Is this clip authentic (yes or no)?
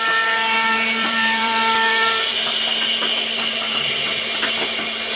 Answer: no